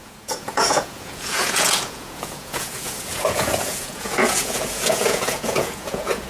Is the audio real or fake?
fake